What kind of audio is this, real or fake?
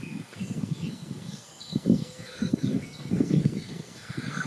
fake